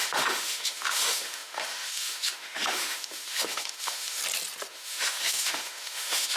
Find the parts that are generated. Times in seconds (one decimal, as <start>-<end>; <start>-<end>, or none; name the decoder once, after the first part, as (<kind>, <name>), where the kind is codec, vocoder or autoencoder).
0.0-4.2 (autoencoder, DAC-VAE); 4.7-6.4